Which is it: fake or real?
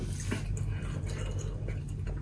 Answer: real